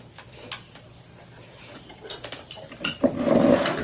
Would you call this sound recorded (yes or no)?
yes